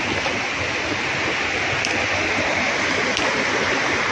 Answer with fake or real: real